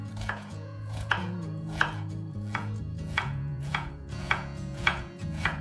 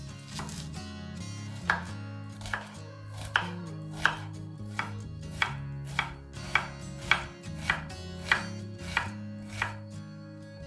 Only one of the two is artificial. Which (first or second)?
first